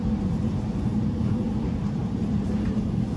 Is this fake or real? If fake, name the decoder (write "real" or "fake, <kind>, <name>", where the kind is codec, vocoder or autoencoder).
fake, vocoder, BigVGAN v2